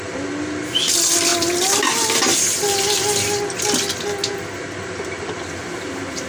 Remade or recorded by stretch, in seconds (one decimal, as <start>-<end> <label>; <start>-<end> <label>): 0.0-6.3 recorded